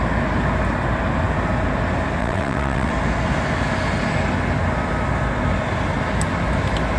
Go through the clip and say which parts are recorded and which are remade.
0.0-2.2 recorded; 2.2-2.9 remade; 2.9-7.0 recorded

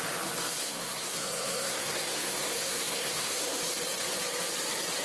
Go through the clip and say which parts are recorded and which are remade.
0.0-0.6 recorded; 0.6-3.6 remade; 3.6-5.0 recorded

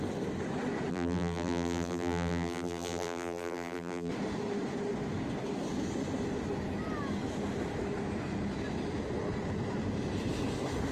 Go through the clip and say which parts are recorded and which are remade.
0.0-0.9 recorded; 0.9-4.1 remade; 4.1-10.9 recorded

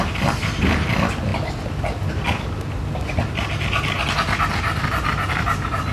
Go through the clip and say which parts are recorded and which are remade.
0.0-5.9 recorded

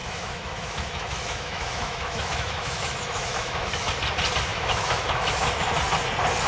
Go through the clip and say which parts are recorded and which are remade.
0.0-3.9 remade; 3.9-4.5 recorded; 4.5-5.8 remade; 5.8-6.5 recorded

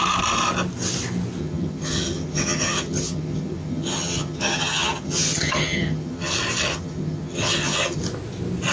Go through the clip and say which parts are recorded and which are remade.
0.0-1.4 recorded; 1.4-6.3 remade; 6.3-6.7 recorded; 6.7-8.0 remade; 8.0-8.7 recorded

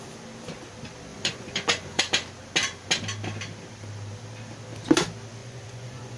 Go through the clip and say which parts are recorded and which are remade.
0.0-1.1 recorded; 1.1-2.0 remade; 2.0-5.4 recorded; 5.4-6.2 remade